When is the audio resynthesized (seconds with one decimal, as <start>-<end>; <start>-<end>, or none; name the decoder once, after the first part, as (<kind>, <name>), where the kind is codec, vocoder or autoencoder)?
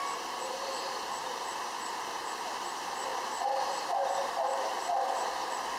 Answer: 0.0-2.3 (vocoder, BigVGAN v2)